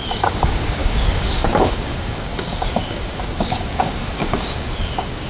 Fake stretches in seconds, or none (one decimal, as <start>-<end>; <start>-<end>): 0.0-5.3